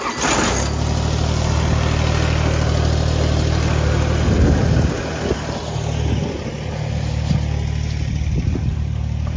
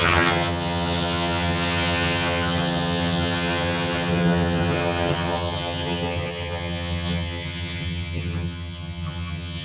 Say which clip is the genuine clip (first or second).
first